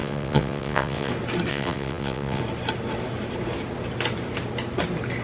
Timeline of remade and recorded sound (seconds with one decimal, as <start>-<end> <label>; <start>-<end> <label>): 0.0-1.1 remade; 1.1-1.5 recorded; 1.5-2.4 remade; 2.4-5.2 recorded